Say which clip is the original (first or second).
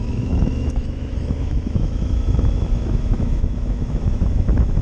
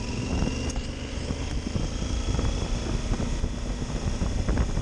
second